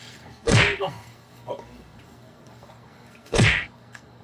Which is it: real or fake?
fake